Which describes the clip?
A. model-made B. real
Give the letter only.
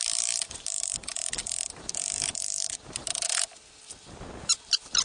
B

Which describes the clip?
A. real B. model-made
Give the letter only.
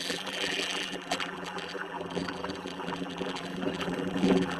B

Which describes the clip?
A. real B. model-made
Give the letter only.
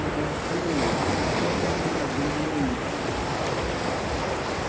A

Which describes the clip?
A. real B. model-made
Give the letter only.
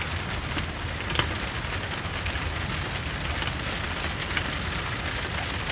A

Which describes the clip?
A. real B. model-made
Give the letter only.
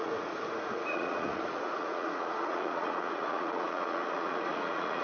B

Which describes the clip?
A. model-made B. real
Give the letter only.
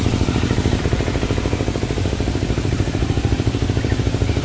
B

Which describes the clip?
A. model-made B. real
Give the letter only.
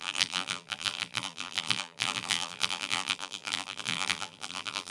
A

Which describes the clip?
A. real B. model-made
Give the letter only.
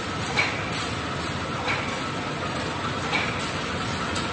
A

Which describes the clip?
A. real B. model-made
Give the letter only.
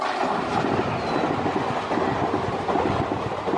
A